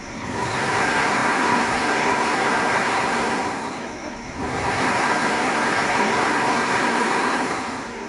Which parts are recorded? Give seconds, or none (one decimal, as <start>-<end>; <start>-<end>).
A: none